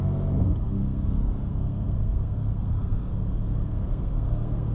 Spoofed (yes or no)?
yes